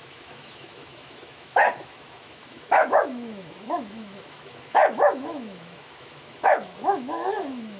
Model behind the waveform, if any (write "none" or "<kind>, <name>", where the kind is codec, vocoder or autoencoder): autoencoder, DAC-VAE